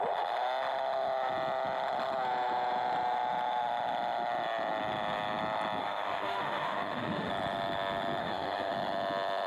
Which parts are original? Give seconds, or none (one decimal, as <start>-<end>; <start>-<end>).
0.0-5.8; 7.3-8.2; 8.7-9.5